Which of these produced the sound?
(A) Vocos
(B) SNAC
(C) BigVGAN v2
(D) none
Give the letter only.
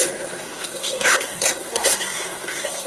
B